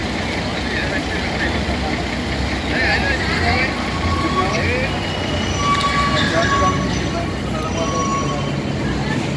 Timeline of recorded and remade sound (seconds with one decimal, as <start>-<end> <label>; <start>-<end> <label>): 0.0-9.4 recorded